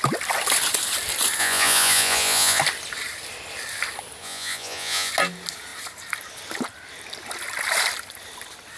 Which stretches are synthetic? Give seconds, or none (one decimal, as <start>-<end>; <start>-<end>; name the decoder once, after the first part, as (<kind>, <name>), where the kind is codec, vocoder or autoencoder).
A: 1.4-2.6 (vocoder, Vocos); 4.2-5.1